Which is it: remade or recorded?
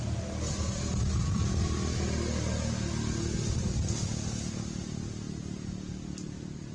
recorded